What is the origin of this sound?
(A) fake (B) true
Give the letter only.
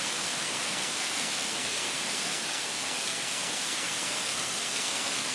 A